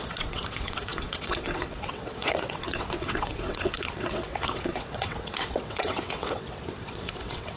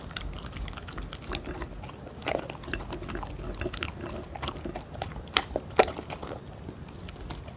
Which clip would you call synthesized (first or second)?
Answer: first